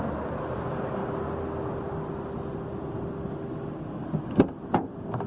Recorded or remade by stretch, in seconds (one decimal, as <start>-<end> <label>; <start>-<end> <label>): 0.0-5.3 recorded